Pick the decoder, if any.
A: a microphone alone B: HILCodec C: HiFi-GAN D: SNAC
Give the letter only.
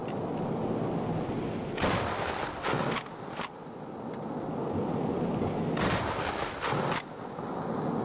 A